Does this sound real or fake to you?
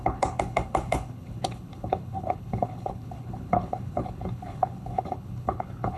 fake